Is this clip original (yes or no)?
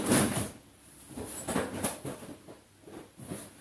yes